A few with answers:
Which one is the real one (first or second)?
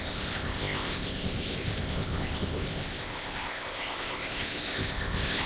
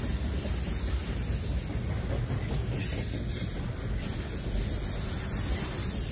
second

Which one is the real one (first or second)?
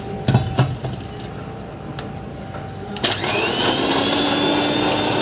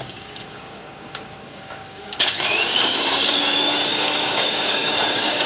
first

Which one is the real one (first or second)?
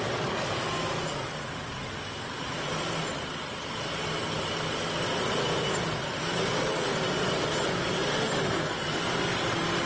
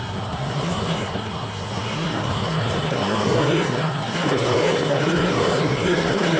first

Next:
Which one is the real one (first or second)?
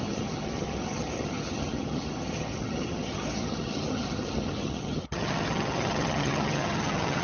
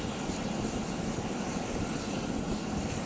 second